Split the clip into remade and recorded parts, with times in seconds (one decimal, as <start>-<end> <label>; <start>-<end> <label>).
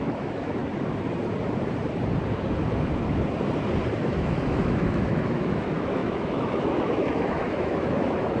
0.0-0.6 remade; 0.6-4.0 recorded; 4.0-8.4 remade